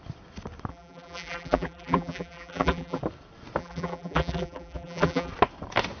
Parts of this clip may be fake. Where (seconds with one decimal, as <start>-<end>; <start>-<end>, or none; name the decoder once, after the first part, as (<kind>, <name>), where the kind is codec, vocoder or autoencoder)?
0.7-3.0 (vocoder, BigVGAN v2); 3.6-5.3